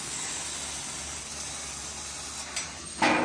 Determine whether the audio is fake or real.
real